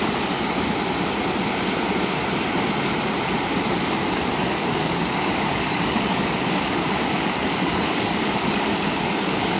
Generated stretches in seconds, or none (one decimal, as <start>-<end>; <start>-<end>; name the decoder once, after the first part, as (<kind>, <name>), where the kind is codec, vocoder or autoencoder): 4.6-9.6 (codec, DAC)